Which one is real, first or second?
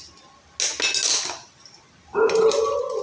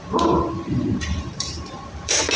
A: first